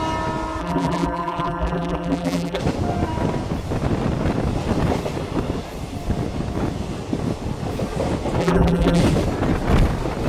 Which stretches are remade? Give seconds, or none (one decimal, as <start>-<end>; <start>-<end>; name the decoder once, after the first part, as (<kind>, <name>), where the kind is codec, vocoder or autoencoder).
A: 0.6-2.6 (vocoder, BigVGAN v2); 8.4-9.0